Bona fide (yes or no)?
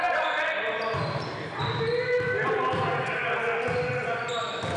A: yes